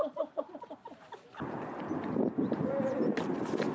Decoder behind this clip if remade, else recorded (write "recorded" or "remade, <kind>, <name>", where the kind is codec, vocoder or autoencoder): recorded